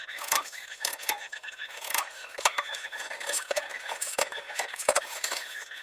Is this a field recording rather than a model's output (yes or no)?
no